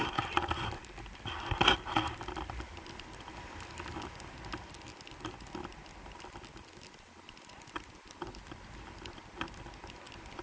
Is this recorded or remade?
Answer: recorded